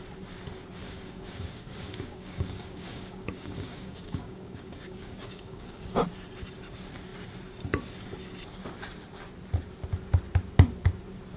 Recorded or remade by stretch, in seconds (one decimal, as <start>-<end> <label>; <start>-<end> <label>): 0.0-0.8 recorded; 0.8-6.0 remade; 6.0-11.4 recorded